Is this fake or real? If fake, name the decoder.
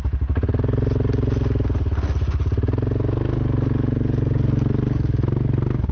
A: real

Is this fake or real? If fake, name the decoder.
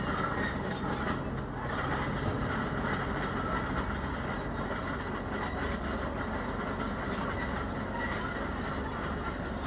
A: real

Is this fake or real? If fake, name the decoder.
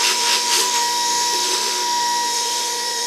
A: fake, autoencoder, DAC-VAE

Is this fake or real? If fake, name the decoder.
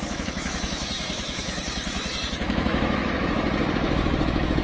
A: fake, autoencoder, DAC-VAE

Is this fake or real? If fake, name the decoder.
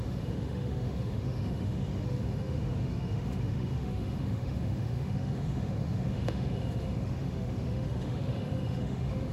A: fake, autoencoder, DAC-VAE